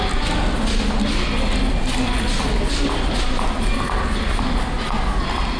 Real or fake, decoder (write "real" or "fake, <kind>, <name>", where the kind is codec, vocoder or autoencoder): real